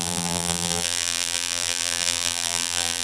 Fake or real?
fake